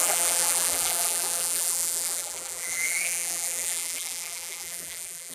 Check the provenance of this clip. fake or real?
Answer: fake